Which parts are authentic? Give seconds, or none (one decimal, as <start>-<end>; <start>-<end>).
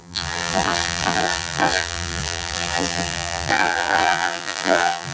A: none